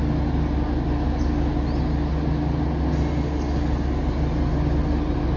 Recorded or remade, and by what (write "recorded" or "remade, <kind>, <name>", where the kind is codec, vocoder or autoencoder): recorded